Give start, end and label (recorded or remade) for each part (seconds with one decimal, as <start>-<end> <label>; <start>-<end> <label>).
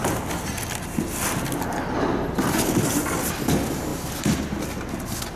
0.0-5.4 recorded